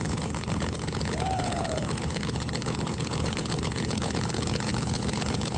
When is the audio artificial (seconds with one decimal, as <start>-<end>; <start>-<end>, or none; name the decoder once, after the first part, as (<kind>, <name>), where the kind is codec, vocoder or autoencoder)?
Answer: 0.0-5.6 (codec, HILCodec)